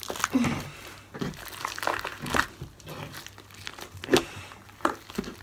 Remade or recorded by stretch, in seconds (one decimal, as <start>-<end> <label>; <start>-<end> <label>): 0.0-5.4 recorded